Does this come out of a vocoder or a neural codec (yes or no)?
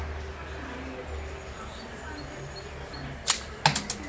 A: no